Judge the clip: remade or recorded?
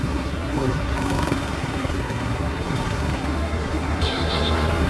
remade